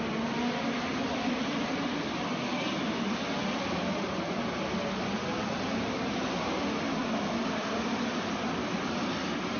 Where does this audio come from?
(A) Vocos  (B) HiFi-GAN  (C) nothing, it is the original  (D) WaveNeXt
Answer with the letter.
C